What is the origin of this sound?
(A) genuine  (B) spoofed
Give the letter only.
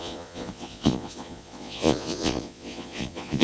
B